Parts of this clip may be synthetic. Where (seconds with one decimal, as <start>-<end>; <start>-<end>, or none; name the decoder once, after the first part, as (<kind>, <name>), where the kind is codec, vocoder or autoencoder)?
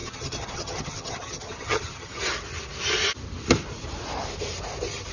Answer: 0.0-2.2 (vocoder, HiFi-GAN)